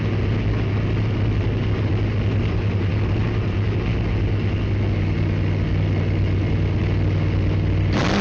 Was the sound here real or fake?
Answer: real